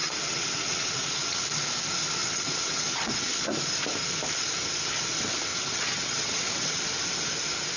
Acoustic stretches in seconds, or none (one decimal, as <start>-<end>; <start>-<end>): 1.4-2.2; 3.5-5.5; 6.8-7.8